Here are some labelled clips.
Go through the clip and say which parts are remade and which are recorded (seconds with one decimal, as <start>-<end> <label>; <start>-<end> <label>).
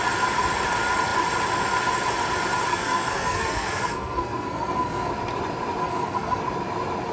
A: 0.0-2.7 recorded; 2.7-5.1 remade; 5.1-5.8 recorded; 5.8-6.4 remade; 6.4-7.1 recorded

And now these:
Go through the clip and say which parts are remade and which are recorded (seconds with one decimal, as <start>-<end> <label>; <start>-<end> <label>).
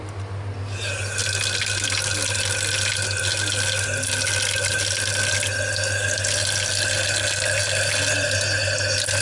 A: 0.0-9.2 recorded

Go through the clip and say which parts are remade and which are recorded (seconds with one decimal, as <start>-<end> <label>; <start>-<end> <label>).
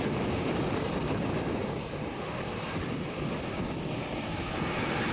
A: 0.0-5.1 recorded